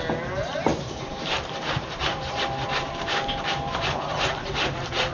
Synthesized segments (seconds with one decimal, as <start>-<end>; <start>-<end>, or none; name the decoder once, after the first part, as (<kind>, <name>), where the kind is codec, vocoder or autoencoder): 0.7-3.8 (vocoder, BigVGAN v2)